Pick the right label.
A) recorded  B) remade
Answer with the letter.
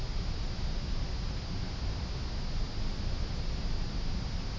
A